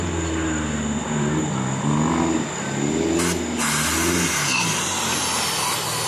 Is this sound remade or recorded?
recorded